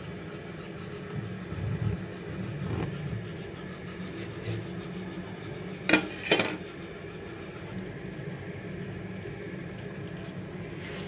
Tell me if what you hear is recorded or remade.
recorded